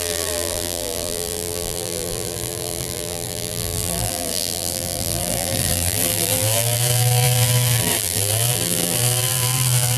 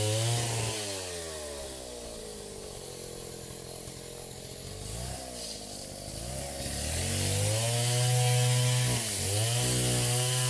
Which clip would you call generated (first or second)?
first